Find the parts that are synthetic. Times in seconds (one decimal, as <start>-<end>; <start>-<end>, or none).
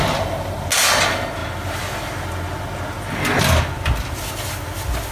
none